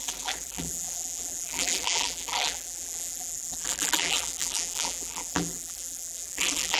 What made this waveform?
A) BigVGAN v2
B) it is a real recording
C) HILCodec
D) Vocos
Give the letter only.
A